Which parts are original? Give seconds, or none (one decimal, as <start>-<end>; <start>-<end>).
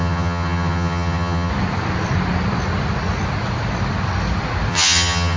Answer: 1.5-4.7